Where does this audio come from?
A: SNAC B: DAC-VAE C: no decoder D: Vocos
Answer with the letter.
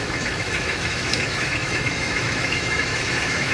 B